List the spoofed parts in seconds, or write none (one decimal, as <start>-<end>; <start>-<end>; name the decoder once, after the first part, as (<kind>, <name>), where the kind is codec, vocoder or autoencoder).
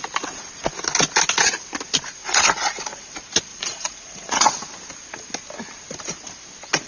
2.2-3.1 (vocoder, Vocos); 3.5-4.5